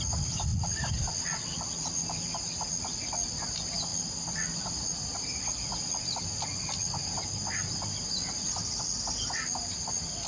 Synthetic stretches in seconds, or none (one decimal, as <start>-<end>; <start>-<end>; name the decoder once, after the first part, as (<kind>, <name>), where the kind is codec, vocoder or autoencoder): none